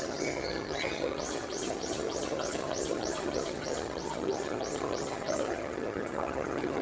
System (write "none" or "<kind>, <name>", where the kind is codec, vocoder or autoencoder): vocoder, HiFi-GAN